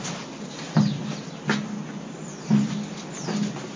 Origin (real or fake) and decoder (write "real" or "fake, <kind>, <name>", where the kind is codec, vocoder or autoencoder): real